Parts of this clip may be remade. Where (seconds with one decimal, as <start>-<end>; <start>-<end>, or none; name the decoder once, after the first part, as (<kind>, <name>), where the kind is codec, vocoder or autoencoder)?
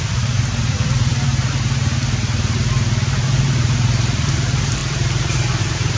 0.0-1.3 (vocoder, BigVGAN v2); 4.0-6.0